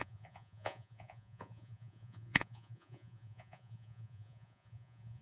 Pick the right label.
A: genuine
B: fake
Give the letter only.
B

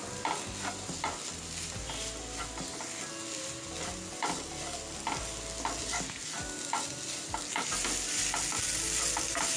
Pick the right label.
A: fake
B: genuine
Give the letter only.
B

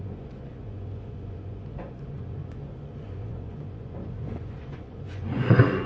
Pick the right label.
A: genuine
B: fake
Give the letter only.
B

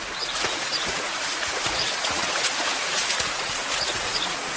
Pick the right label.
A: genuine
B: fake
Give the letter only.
B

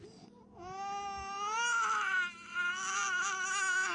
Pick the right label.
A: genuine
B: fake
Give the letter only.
A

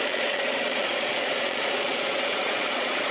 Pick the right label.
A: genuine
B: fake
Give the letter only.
B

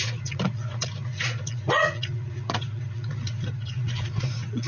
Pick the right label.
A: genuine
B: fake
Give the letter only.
B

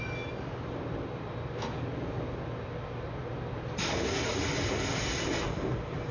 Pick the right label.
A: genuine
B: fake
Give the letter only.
A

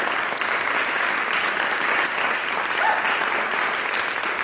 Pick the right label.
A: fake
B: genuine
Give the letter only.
B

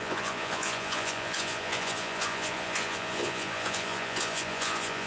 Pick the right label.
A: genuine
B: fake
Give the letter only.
B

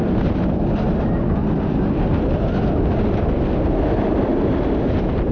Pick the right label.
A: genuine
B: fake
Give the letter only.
A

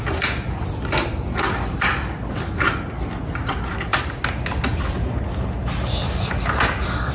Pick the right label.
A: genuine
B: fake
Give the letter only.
A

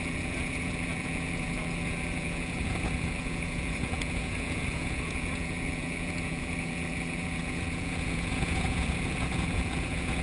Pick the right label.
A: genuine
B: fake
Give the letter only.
B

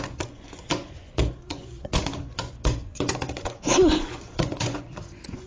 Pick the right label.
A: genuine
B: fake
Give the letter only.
B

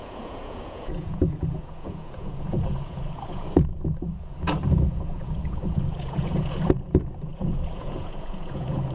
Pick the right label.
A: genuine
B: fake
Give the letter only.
B